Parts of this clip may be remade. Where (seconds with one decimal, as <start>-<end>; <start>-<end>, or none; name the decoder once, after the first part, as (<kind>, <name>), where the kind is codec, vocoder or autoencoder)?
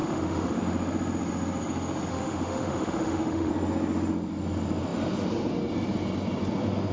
0.0-0.6 (autoencoder, DAC-VAE); 2.1-3.5